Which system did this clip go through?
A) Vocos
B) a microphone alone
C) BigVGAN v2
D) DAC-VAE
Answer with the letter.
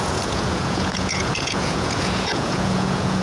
A